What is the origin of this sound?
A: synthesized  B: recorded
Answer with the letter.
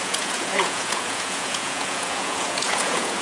A